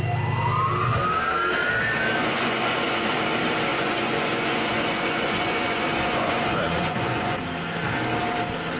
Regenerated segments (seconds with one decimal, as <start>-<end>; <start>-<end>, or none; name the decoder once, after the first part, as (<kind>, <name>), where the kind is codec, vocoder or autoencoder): 2.2-3.1 (vocoder, Vocos); 3.7-7.4